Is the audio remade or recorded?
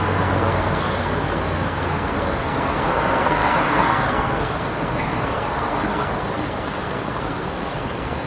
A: remade